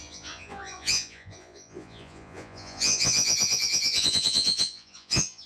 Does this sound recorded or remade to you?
remade